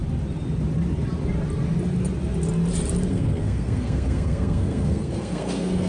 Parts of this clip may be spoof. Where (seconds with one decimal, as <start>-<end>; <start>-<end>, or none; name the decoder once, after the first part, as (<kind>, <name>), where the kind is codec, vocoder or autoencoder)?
3.1-5.9 (codec, SNAC)